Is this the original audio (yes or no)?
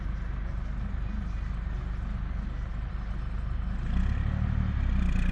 yes